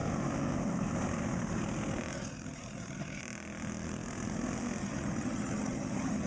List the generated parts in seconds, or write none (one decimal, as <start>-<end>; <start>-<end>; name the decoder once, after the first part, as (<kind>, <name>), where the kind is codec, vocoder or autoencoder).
2.1-3.2 (vocoder, HiFi-GAN); 4.8-6.3